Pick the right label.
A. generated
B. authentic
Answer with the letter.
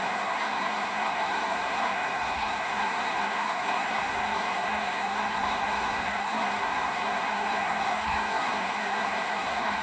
A